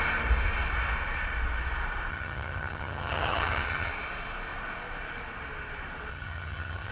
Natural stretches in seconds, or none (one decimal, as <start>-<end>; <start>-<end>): 0.0-2.1; 3.9-6.1